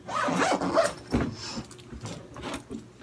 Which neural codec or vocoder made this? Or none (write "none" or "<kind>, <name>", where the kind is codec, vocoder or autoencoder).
none